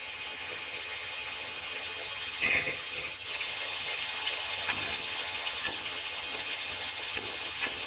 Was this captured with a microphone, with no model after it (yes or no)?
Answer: no